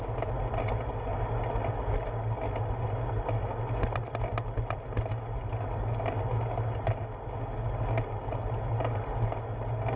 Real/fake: real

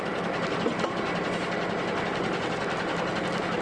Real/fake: real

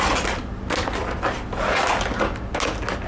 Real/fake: real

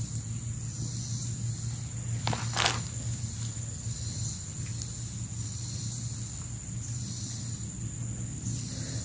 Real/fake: real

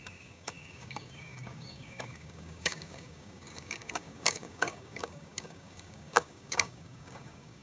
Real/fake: fake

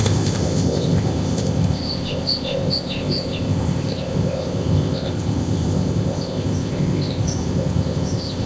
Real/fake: fake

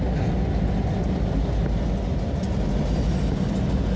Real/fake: real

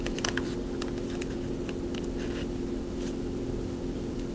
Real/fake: real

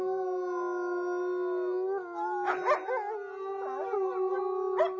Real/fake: real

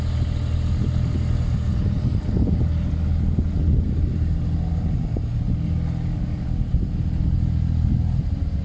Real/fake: real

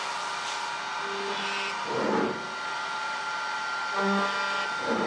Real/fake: real